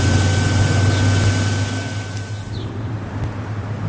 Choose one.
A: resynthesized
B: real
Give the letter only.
B